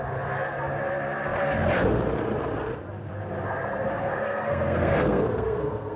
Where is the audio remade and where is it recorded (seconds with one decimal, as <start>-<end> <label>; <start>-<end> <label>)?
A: 0.0-3.9 recorded; 3.9-6.0 remade